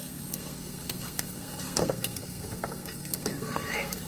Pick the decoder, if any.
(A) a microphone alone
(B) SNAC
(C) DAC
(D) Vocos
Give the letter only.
B